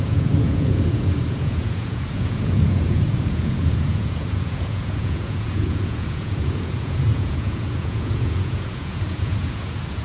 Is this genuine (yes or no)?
no